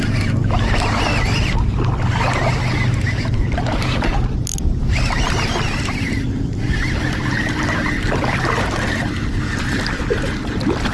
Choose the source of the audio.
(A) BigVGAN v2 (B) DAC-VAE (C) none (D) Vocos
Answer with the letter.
C